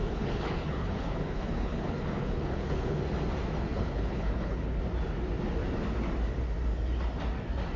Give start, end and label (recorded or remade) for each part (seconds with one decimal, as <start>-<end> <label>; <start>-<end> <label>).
0.0-3.0 remade; 3.0-3.7 recorded; 3.7-4.8 remade; 4.8-7.8 recorded